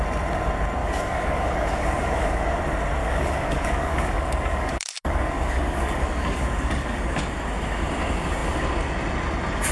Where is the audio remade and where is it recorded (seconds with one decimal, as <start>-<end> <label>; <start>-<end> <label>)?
0.0-0.8 recorded; 0.8-2.6 remade; 2.6-3.0 recorded; 3.0-7.2 remade; 7.2-9.7 recorded